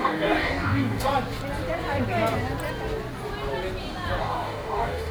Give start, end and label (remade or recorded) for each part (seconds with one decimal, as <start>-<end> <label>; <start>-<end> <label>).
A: 0.0-1.1 remade; 1.1-4.2 recorded; 4.2-5.1 remade